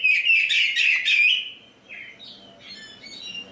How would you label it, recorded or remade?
recorded